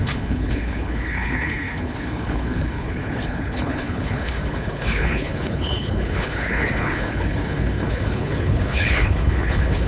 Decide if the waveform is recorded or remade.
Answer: remade